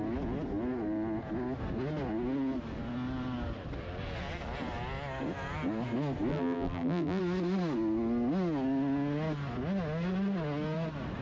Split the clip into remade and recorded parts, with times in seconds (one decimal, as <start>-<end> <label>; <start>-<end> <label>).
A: 0.0-6.3 recorded; 6.3-7.2 remade; 7.2-11.2 recorded